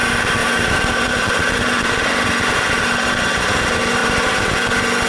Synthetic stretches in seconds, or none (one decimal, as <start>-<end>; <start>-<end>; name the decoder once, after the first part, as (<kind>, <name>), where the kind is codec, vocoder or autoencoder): 0.4-3.5 (vocoder, BigVGAN v2); 4.0-4.6